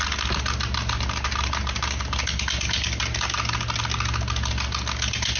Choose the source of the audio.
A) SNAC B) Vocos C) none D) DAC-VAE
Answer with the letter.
C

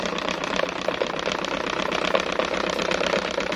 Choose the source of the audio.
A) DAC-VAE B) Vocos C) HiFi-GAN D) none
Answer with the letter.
D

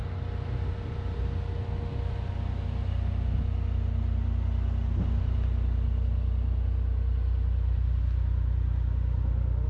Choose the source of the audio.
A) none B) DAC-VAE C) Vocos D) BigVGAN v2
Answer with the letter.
A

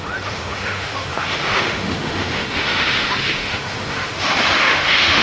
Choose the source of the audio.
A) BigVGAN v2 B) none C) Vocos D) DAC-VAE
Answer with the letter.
D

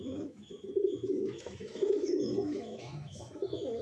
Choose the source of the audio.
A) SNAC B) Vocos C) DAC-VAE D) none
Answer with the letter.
C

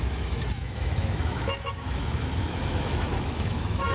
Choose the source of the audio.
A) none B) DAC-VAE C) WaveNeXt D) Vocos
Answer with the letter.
B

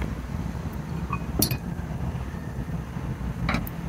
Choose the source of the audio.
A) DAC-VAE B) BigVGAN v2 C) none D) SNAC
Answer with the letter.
C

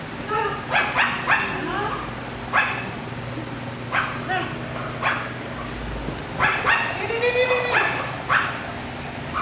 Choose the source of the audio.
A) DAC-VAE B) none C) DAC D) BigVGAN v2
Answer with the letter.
B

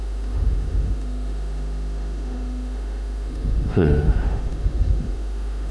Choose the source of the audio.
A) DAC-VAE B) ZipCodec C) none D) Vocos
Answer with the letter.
A